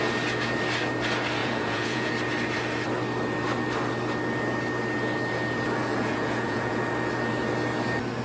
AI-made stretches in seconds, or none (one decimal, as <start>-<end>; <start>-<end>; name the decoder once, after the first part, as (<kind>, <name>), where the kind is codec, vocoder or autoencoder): 1.4-2.1 (vocoder, Vocos); 5.9-6.8